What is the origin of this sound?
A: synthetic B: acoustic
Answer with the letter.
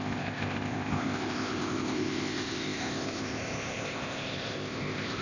A